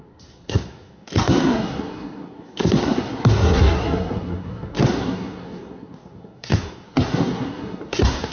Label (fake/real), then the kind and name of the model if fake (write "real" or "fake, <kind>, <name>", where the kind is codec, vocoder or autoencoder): fake, codec, SNAC